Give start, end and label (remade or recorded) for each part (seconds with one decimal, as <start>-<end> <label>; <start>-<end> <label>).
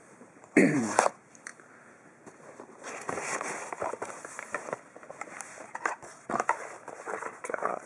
0.0-7.9 remade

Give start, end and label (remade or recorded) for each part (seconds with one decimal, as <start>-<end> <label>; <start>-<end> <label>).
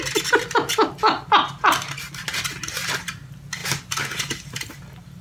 0.0-5.2 recorded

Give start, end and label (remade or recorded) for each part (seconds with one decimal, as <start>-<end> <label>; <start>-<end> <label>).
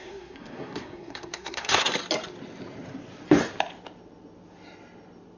0.0-1.9 remade; 1.9-5.4 recorded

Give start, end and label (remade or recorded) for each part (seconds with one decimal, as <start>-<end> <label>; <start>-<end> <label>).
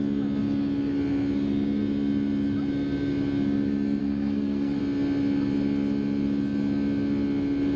0.0-4.0 recorded; 4.0-4.8 remade; 4.8-7.8 recorded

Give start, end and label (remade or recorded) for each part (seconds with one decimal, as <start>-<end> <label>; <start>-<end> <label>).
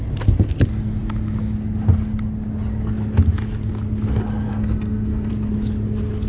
0.0-4.5 recorded; 4.5-5.3 remade; 5.3-6.3 recorded